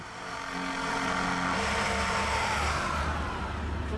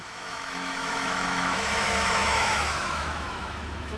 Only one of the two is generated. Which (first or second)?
second